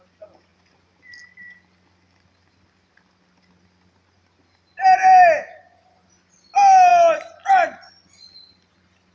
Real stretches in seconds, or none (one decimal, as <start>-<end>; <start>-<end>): 0.0-9.1